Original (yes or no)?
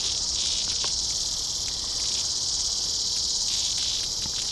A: yes